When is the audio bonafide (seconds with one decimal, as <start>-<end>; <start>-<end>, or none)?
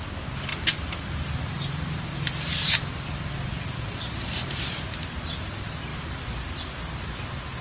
0.0-0.5; 4.9-5.9; 6.6-7.6